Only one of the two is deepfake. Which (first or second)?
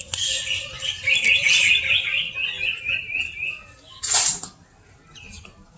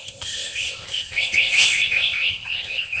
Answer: second